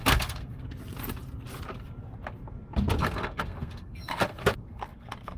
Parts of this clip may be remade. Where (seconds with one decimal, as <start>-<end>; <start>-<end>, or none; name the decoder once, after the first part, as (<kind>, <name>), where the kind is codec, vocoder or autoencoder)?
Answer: 0.0-0.6 (codec, SNAC); 3.0-5.4